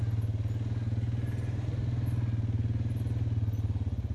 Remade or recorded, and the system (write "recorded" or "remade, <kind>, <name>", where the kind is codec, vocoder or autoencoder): recorded